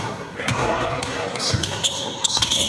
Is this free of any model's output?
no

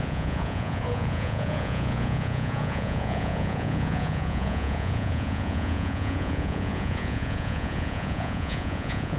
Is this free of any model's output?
no